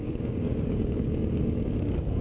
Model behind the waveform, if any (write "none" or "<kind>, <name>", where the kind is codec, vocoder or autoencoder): codec, DAC